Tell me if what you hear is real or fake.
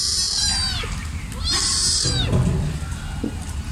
real